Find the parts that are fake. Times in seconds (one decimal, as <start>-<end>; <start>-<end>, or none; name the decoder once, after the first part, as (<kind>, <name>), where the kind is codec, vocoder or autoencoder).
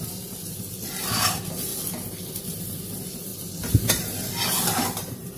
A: 0.0-1.7 (vocoder, BigVGAN v2); 2.4-3.3; 3.8-5.4